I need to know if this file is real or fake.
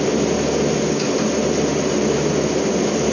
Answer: real